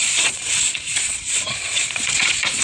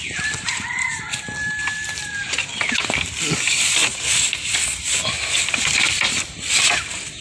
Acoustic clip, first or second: second